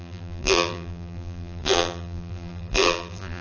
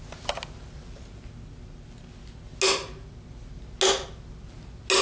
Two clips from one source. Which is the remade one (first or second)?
first